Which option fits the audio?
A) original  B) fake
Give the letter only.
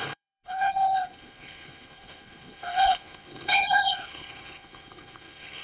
B